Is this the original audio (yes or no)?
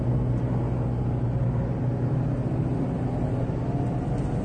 yes